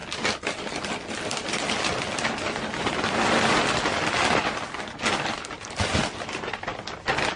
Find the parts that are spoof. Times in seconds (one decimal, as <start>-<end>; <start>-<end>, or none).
none